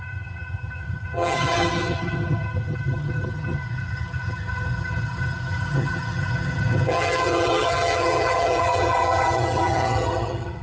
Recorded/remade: remade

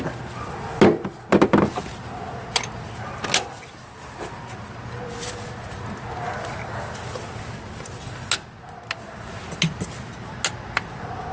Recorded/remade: recorded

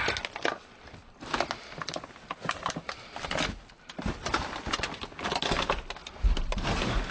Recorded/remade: recorded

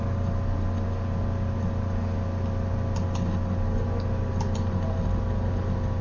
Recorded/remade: recorded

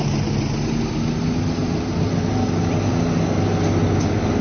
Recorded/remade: recorded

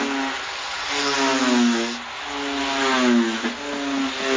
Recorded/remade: recorded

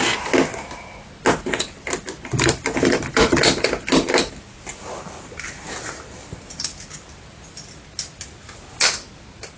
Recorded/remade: recorded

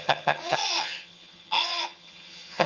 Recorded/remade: remade